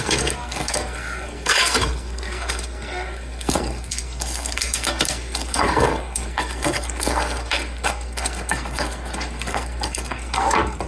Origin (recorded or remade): remade